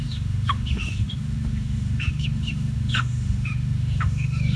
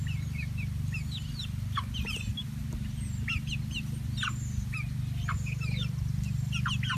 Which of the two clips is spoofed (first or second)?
first